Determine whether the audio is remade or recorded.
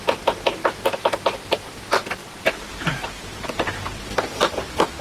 remade